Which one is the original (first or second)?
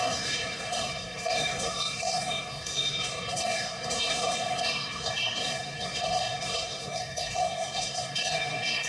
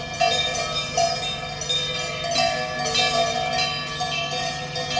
second